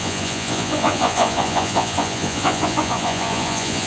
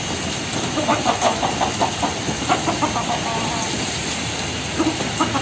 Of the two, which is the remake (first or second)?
first